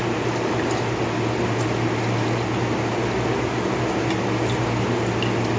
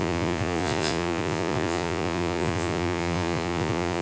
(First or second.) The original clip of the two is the first